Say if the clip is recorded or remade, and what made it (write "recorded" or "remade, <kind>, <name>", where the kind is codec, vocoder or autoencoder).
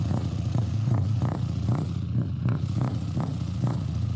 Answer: remade, vocoder, Vocos